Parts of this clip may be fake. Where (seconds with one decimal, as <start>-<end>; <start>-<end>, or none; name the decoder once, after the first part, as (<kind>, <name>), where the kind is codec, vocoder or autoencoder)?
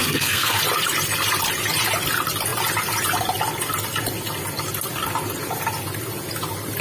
0.0-0.6 (codec, SNAC)